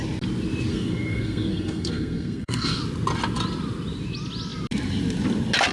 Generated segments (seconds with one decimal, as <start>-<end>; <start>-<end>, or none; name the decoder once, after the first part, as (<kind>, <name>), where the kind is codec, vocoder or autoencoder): 0.7-2.8 (codec, SNAC)